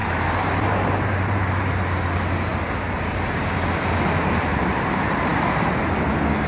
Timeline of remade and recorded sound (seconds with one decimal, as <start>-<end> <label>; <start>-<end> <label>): 0.0-1.8 remade; 1.8-6.5 recorded